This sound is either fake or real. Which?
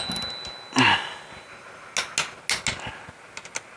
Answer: real